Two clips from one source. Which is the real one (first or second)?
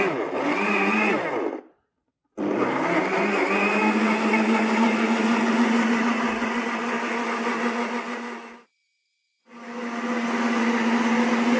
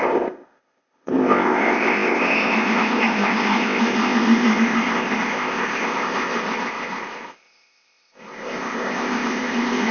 first